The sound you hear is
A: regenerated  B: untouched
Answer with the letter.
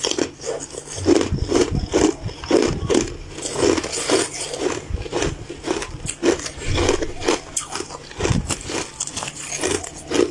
B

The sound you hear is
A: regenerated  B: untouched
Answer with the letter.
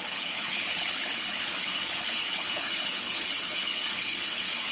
A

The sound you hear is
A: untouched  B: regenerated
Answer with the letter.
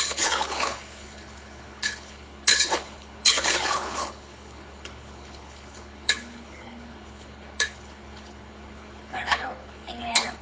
B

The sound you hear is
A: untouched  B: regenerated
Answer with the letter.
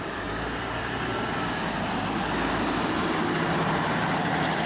A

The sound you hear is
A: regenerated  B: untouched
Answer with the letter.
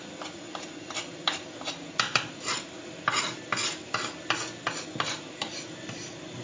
B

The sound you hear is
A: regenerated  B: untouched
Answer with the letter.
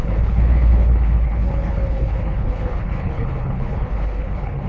A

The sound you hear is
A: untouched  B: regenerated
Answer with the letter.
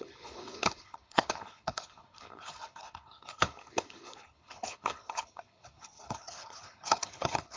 B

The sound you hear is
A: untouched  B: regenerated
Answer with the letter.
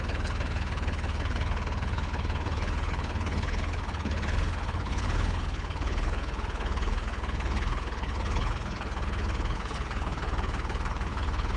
B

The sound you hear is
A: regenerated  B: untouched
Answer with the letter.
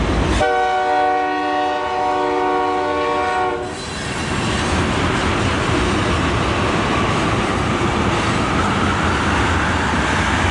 B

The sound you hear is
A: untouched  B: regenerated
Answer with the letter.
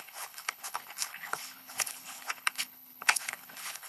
B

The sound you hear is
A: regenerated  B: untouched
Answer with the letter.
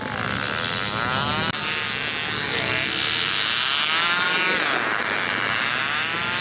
B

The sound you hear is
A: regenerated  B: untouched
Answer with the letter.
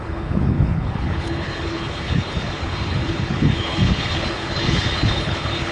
A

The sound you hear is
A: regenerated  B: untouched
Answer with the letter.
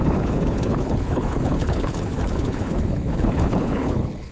A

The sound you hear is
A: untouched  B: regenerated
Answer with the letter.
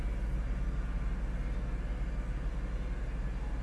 A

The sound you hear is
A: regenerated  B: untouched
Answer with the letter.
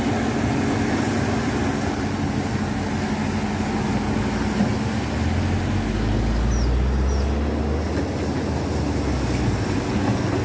B